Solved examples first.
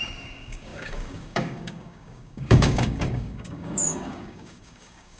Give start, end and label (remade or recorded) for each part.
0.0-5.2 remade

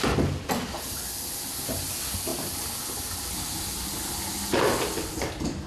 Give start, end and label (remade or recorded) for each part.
0.0-5.7 recorded

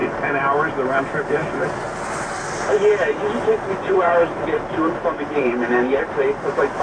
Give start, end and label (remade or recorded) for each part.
0.0-1.0 recorded; 1.0-1.4 remade; 1.4-4.0 recorded; 4.0-6.8 remade

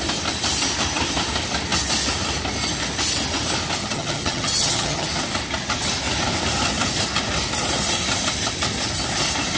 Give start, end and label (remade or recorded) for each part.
0.0-3.8 recorded; 3.8-5.1 remade; 5.1-9.6 recorded